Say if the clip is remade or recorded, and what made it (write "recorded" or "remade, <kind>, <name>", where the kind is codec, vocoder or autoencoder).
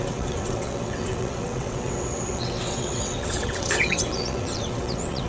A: remade, vocoder, WaveNeXt